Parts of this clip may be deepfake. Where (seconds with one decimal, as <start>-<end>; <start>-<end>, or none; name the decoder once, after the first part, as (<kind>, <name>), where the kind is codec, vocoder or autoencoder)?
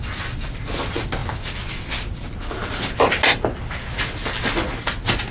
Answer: none